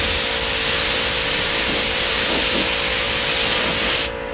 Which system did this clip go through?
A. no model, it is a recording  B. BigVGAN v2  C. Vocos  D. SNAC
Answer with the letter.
A